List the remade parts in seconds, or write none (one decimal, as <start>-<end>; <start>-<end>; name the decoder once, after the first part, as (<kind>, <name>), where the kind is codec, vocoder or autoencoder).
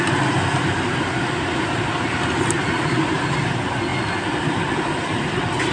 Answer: none